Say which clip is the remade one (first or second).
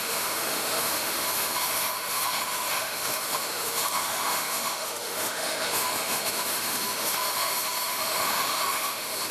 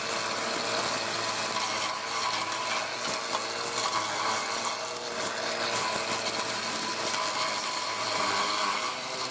first